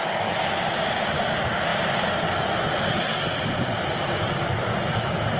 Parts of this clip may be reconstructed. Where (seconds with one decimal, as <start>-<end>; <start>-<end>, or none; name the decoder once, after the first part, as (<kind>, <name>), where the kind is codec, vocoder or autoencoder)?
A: none